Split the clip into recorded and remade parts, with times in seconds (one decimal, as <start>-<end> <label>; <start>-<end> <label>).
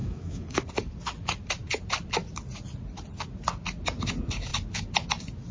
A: 0.0-0.6 remade; 0.6-5.5 recorded